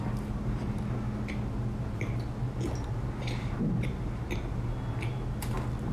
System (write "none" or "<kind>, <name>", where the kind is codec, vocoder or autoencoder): none